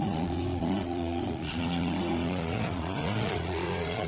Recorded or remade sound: remade